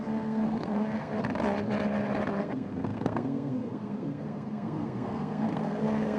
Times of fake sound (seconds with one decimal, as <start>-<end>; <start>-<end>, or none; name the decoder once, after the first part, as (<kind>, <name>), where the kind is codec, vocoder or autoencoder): 0.0-1.1 (codec, SNAC); 2.4-6.2

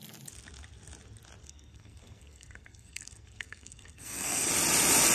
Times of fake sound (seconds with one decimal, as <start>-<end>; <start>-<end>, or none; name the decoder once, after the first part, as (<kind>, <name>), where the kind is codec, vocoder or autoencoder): 1.4-4.5 (codec, SNAC)

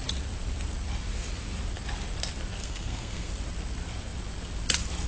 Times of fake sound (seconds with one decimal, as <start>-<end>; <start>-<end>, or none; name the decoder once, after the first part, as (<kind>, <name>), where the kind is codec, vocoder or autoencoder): 2.6-3.3 (codec, SNAC)

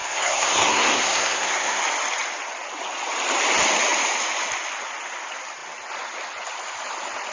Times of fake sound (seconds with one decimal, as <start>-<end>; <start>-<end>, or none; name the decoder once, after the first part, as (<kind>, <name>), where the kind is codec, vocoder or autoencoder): 0.0-1.8 (codec, SNAC)

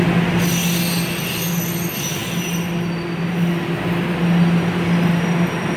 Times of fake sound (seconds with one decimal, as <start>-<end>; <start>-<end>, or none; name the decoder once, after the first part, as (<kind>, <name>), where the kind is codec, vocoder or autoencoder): none

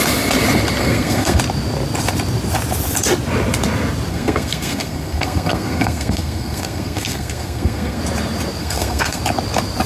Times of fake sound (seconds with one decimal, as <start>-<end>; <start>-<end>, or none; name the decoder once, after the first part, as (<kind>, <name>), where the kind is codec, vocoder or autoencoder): 0.8-1.4 (codec, SNAC); 4.1-8.0; 8.6-9.2

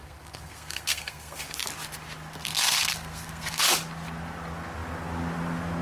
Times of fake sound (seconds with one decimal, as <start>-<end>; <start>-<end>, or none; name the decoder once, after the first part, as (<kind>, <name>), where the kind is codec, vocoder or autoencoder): 0.0-1.4 (codec, SNAC); 2.4-3.6